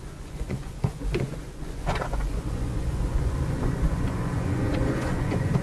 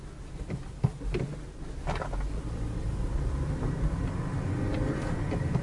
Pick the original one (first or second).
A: second